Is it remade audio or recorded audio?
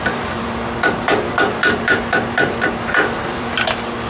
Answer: remade